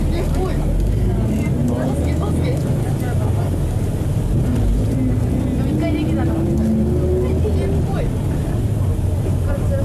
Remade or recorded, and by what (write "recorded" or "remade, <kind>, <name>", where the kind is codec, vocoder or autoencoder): recorded